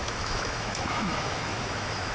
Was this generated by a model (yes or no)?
yes